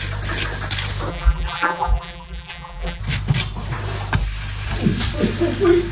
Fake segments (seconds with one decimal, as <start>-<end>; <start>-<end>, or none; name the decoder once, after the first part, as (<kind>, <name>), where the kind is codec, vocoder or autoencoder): 1.1-3.0 (vocoder, BigVGAN v2)